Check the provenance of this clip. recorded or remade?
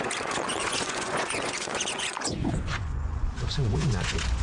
remade